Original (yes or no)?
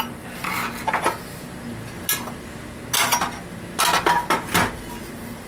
yes